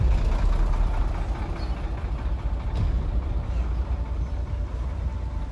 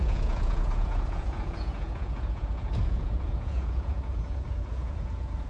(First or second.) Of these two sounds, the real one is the first